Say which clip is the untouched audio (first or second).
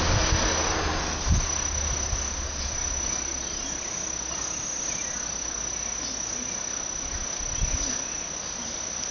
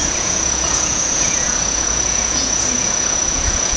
first